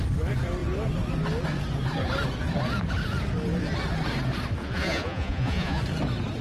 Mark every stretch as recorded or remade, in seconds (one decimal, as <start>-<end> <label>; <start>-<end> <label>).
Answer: 0.0-4.6 recorded; 4.6-5.8 remade; 5.8-6.4 recorded